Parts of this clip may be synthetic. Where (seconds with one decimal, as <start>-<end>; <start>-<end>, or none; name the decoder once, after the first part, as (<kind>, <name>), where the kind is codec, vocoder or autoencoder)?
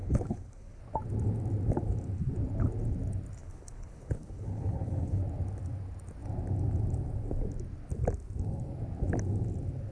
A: 0.0-0.8 (codec, HILCodec); 3.4-5.2